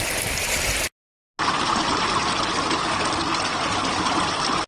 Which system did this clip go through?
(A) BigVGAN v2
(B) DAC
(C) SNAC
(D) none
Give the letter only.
D